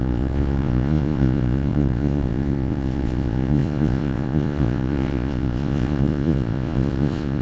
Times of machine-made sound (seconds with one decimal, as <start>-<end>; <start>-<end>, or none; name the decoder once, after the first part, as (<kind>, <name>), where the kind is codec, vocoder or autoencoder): 0.0-7.4 (vocoder, Vocos)